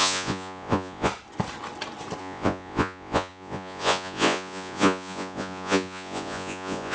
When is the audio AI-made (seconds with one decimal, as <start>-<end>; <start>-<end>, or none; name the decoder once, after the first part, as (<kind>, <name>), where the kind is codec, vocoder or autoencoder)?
0.0-1.1 (vocoder, Vocos); 2.2-6.9